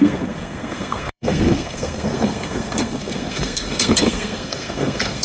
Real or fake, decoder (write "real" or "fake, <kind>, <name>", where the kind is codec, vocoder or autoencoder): fake, codec, SNAC